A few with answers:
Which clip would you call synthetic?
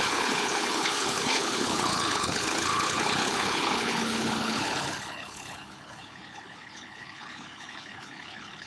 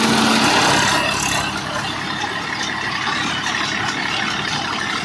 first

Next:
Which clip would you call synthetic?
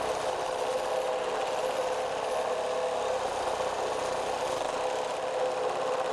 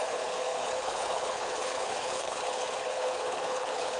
second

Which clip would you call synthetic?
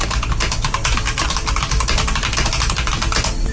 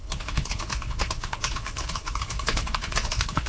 second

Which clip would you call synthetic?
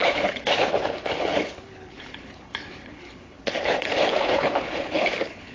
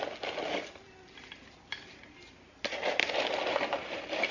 first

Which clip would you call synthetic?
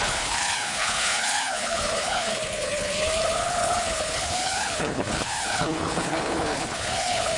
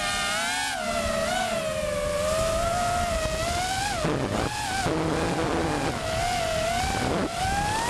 first